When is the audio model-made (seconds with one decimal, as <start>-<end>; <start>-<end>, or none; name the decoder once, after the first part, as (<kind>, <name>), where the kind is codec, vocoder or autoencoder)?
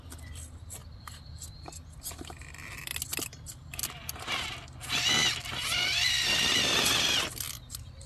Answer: none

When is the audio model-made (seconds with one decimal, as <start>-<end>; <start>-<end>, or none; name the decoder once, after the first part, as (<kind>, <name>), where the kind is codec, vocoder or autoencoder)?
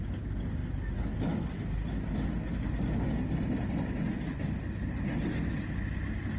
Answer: none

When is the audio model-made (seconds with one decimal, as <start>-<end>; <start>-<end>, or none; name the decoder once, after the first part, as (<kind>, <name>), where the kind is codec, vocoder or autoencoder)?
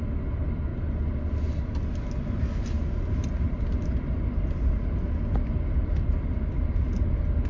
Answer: none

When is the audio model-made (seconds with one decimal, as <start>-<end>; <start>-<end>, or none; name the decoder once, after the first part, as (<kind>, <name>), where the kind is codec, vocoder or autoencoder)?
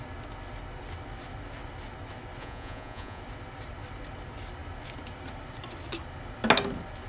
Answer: 2.4-3.2 (vocoder, Vocos)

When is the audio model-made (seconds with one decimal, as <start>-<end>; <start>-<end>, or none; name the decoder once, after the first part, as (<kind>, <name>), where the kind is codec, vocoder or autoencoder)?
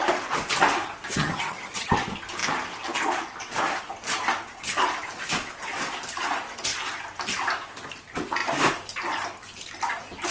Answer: 1.1-1.9 (vocoder, HiFi-GAN)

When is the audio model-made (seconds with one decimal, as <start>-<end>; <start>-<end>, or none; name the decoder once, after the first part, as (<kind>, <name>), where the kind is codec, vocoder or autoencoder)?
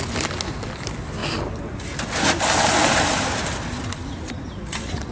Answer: none